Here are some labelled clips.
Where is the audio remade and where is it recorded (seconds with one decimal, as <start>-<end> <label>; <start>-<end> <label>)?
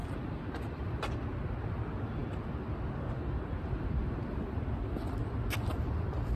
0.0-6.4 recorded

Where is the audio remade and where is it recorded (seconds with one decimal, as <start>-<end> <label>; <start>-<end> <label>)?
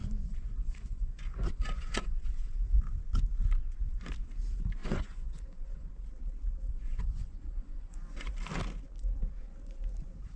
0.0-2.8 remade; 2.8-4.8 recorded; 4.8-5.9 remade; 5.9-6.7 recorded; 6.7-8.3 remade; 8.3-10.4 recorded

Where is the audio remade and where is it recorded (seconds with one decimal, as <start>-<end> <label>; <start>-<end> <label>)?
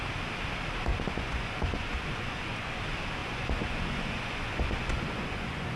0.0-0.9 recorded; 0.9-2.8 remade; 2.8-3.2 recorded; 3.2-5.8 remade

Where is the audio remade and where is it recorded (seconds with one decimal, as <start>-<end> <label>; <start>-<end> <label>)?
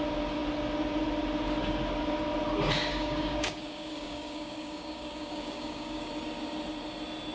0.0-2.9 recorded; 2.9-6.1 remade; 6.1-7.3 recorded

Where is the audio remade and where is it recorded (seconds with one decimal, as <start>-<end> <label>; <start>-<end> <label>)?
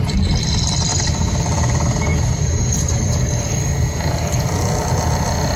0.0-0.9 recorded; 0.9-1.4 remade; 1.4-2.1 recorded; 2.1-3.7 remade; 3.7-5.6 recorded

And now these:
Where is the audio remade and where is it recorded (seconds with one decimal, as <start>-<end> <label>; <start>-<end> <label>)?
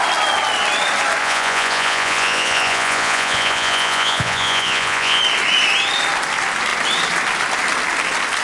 0.0-1.2 recorded; 1.2-5.2 remade; 5.2-8.4 recorded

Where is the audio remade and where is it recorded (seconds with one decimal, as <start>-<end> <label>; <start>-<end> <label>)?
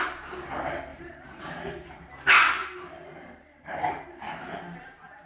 0.0-0.9 recorded; 0.9-1.6 remade; 1.6-2.6 recorded; 2.6-3.9 remade; 3.9-5.3 recorded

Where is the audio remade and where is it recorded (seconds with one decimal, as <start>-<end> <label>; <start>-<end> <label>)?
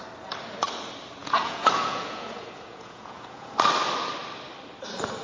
0.0-1.2 recorded; 1.2-3.5 remade; 3.5-5.2 recorded